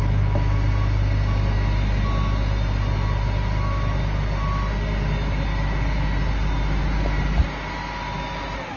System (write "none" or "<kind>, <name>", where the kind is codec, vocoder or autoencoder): none